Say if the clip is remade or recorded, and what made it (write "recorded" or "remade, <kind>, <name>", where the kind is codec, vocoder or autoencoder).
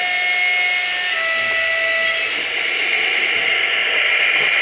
recorded